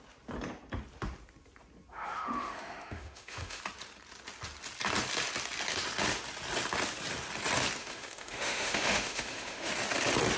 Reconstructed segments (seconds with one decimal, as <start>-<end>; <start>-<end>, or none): 1.9-3.6; 7.8-9.7